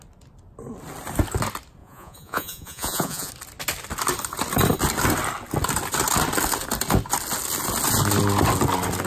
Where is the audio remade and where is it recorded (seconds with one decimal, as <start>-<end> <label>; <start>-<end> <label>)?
0.0-1.8 recorded; 1.8-3.3 remade; 3.3-9.1 recorded